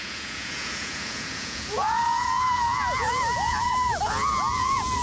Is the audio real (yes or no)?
no